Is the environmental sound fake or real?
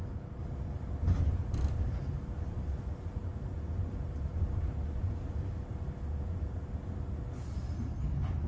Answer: real